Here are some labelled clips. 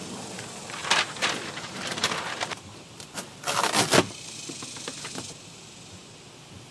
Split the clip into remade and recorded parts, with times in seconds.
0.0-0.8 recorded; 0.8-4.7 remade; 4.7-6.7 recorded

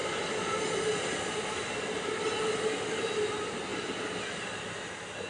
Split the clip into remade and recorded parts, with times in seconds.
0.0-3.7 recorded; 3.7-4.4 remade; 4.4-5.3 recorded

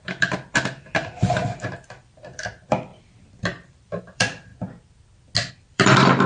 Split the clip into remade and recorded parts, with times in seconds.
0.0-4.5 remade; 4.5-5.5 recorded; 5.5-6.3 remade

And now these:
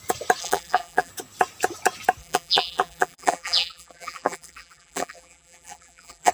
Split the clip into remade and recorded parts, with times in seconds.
0.0-0.4 recorded; 0.4-1.1 remade; 1.1-2.2 recorded; 2.2-6.3 remade